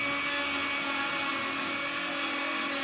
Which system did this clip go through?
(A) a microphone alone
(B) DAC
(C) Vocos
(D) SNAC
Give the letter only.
A